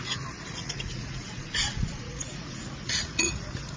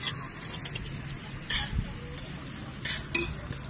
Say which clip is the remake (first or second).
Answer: first